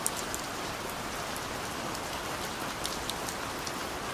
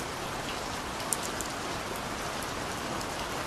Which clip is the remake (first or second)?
first